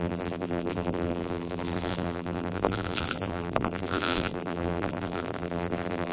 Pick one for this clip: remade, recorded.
remade